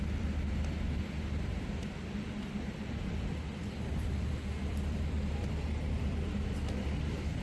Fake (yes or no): yes